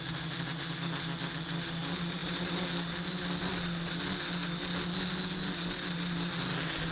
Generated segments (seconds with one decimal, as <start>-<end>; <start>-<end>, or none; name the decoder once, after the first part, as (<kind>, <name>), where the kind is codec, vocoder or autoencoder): none